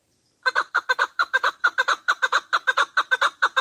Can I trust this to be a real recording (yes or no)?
no